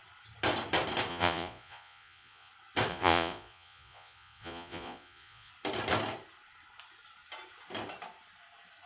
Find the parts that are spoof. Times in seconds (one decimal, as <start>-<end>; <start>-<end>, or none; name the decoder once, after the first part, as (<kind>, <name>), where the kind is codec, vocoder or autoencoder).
1.1-2.5 (vocoder, Vocos); 2.9-5.5